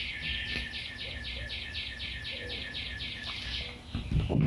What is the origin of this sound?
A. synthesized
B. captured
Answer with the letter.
B